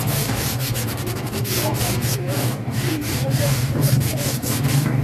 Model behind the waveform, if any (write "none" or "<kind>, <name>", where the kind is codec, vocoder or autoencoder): codec, DAC